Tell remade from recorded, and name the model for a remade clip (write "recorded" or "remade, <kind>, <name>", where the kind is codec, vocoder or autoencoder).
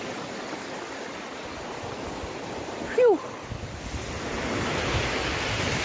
recorded